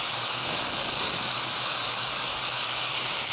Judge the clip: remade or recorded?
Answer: remade